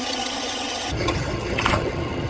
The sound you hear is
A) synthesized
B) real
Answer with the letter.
A